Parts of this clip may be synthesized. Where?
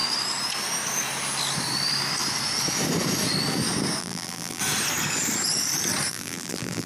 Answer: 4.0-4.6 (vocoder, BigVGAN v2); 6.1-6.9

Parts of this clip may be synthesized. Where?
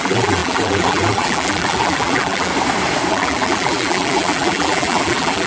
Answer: 0.0-2.5 (vocoder, BigVGAN v2); 3.1-5.5